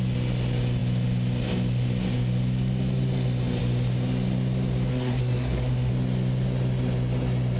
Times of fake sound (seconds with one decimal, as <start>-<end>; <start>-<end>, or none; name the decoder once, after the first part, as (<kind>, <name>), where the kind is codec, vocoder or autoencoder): 4.9-5.9 (codec, SNAC)